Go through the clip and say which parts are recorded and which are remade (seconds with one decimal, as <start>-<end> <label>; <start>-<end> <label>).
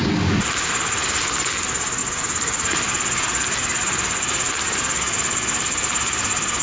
0.0-6.6 recorded